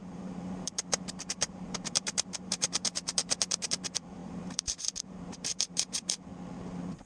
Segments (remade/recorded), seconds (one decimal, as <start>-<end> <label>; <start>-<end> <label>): 0.0-6.3 remade; 6.3-7.1 recorded